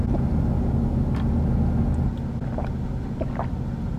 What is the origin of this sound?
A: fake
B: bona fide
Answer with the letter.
B